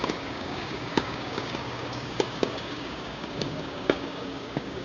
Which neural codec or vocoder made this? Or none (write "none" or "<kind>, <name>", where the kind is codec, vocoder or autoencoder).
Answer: codec, DAC